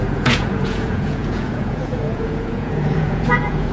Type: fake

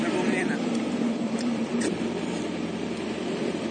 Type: fake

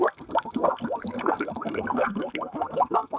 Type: fake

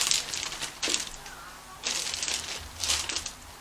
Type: real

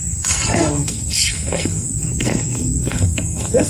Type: fake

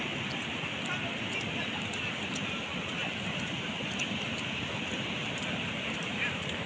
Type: real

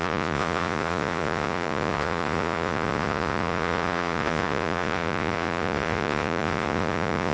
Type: fake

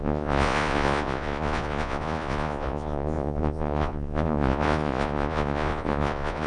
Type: fake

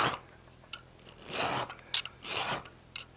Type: real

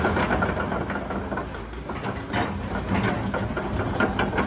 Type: real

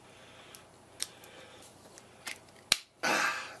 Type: real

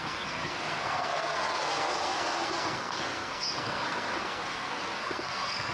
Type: fake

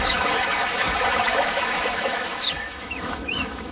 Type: fake